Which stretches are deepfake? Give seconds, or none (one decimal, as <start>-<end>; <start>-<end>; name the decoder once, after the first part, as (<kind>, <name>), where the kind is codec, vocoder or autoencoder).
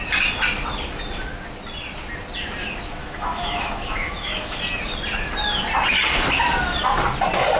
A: 3.0-4.6 (autoencoder, DAC-VAE)